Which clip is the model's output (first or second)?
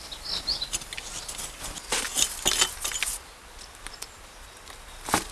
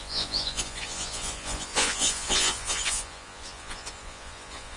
second